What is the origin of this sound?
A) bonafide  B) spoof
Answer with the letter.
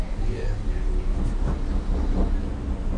A